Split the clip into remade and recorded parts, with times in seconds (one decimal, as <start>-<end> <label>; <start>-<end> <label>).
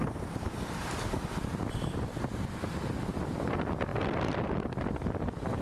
0.0-0.8 remade; 0.8-3.9 recorded; 3.9-4.5 remade; 4.5-5.6 recorded